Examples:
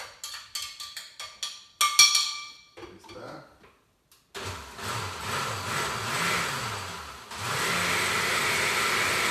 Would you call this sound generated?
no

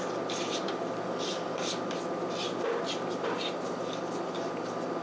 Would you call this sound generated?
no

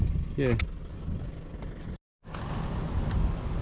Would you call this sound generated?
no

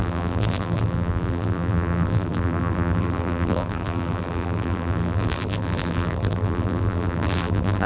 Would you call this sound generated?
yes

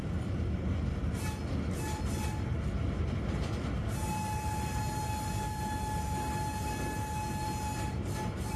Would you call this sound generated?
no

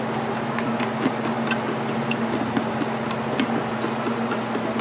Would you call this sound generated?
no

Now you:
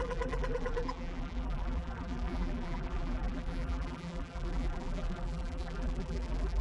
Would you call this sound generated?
yes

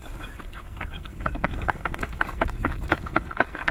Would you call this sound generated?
yes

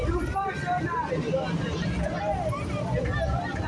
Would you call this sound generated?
yes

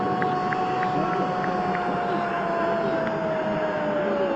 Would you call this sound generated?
no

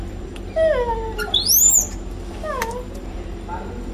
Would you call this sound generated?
no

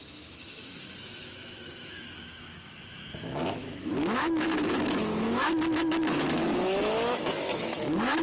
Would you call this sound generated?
yes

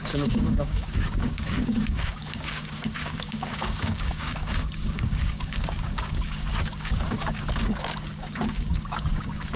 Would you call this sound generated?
yes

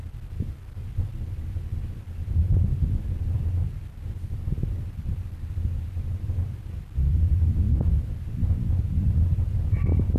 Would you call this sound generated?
yes